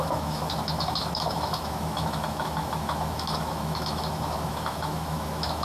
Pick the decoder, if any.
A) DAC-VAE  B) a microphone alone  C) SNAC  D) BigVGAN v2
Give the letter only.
A